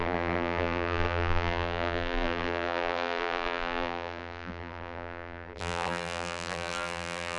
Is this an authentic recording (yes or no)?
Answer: no